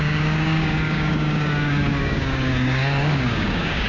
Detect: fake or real fake